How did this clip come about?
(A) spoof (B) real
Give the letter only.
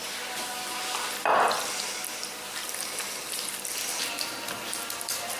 B